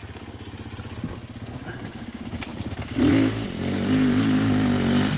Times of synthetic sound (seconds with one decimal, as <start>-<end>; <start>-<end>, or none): none